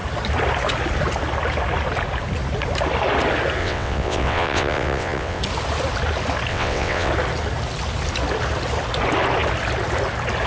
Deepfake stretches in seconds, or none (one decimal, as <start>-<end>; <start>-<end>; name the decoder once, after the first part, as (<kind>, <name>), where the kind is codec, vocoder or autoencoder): 3.6-5.4 (vocoder, WaveNeXt); 6.5-7.1